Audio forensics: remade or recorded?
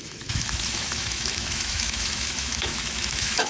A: remade